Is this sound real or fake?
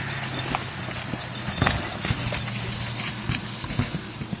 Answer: real